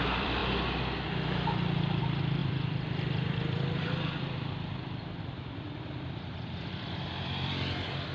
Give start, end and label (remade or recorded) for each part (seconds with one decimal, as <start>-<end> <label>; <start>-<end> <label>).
0.0-0.4 remade; 0.4-2.0 recorded; 2.0-8.1 remade